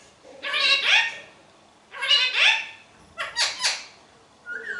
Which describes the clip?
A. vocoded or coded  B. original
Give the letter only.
B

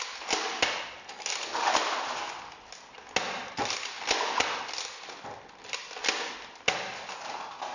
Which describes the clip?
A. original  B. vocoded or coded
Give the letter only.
A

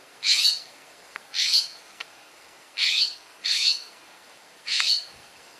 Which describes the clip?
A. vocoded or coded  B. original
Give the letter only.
A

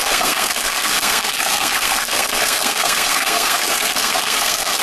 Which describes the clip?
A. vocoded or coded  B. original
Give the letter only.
A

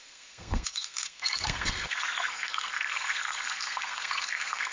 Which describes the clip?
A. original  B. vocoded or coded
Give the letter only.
B